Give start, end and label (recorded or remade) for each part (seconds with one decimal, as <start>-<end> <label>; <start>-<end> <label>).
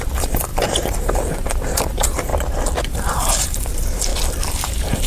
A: 0.0-2.3 remade; 2.3-2.9 recorded; 2.9-4.1 remade; 4.1-4.6 recorded; 4.6-5.1 remade